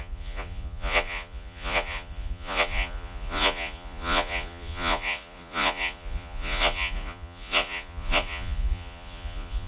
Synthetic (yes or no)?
yes